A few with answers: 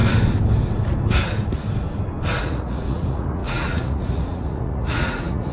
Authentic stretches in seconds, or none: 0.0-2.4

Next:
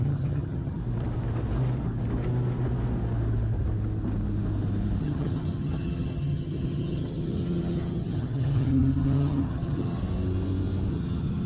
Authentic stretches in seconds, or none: 0.8-5.0; 10.0-10.9

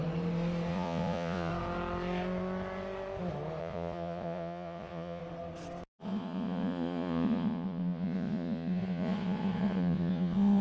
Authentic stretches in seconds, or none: 0.0-0.7; 1.5-3.6; 5.2-6.0

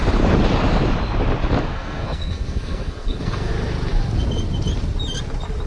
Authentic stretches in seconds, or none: 0.0-1.7; 3.5-5.7